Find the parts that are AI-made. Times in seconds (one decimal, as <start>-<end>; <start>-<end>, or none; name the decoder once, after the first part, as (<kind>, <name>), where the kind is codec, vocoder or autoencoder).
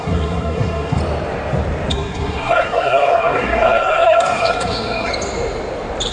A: 0.0-1.0 (codec, SNAC); 1.9-5.1